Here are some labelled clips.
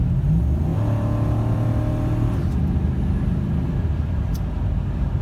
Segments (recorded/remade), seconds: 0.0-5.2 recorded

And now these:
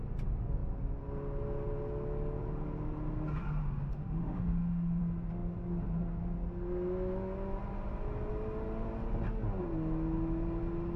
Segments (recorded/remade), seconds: 0.0-3.6 recorded; 3.6-5.0 remade; 5.0-11.0 recorded

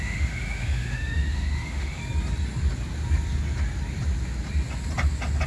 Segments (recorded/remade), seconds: 0.0-2.0 remade; 2.0-5.5 recorded

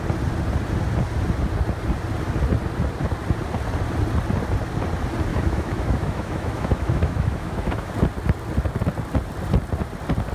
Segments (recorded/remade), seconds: 0.0-5.3 recorded; 5.3-7.9 remade; 7.9-10.3 recorded

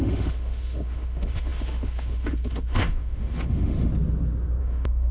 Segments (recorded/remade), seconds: 0.0-3.9 remade; 3.9-4.6 recorded; 4.6-5.1 remade